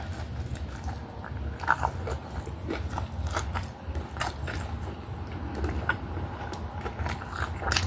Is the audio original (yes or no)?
yes